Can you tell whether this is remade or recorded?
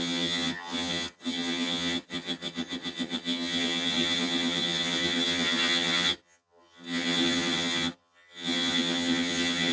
remade